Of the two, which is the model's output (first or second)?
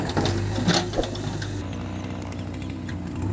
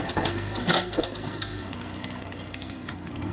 second